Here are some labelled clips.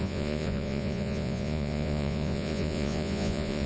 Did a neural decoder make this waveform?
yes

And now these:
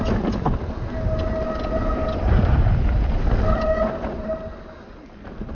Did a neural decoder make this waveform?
no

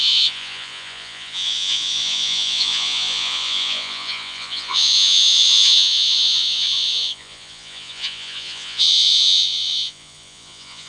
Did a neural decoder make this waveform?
yes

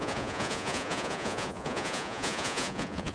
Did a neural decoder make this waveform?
yes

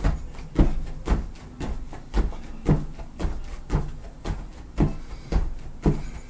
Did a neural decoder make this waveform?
no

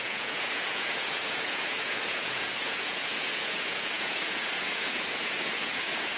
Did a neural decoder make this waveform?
yes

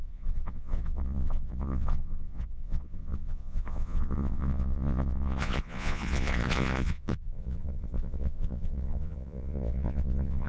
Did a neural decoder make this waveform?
yes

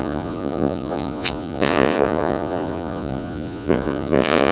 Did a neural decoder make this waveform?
yes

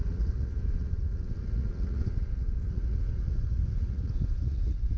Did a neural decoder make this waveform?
yes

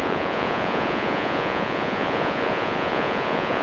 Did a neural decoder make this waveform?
yes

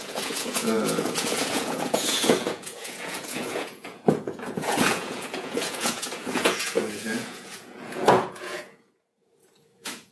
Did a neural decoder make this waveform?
yes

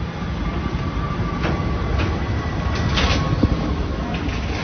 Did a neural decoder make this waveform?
no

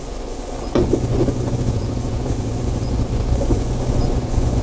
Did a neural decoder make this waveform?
yes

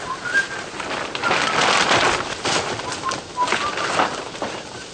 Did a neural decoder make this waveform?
no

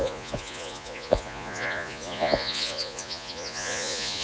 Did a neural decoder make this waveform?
yes